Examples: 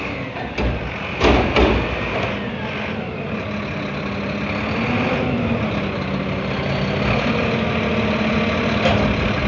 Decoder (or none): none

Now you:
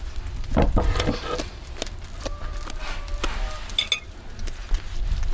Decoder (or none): none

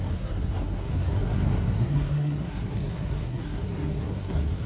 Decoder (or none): codec, SNAC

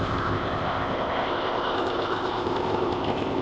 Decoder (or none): codec, ZipCodec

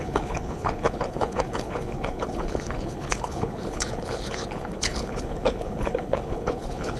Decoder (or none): codec, HILCodec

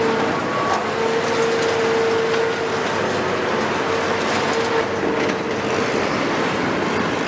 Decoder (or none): none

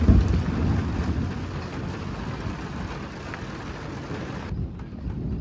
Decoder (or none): none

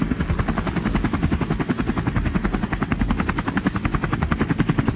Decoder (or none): none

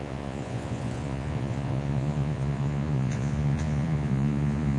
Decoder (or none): vocoder, Vocos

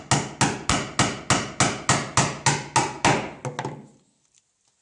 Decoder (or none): none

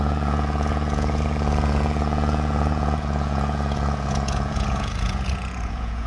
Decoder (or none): vocoder, Vocos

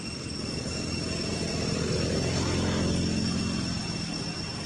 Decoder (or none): none